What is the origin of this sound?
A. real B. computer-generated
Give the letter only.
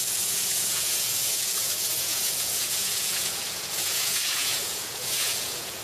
B